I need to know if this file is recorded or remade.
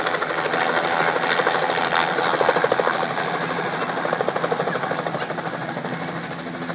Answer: recorded